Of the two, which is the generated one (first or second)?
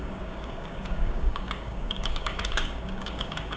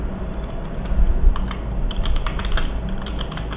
first